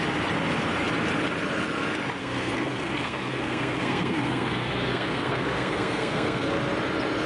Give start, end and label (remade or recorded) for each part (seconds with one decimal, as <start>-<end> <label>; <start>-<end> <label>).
0.0-2.2 recorded; 2.2-6.6 remade; 6.6-7.3 recorded